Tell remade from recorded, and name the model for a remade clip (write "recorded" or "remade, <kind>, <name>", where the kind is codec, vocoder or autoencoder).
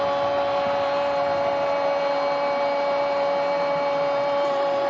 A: recorded